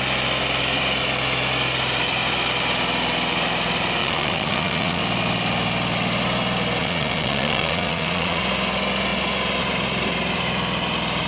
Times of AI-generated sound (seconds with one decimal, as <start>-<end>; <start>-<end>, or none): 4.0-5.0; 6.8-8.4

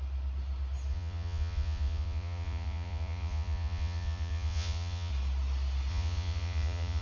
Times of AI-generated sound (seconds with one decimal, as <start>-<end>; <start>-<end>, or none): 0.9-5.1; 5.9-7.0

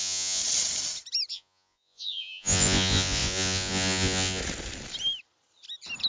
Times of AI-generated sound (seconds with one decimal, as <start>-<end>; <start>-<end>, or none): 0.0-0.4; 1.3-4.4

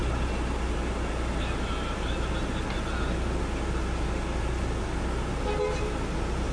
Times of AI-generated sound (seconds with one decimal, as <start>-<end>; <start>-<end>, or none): none